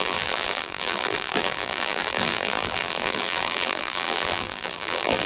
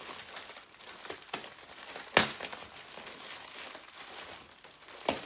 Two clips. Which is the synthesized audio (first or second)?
first